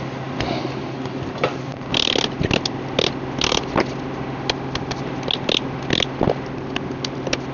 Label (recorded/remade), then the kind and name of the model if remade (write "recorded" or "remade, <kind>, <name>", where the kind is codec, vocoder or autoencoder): recorded